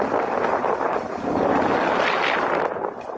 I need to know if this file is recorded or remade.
recorded